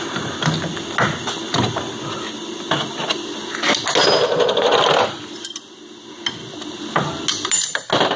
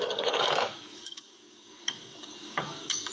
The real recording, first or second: first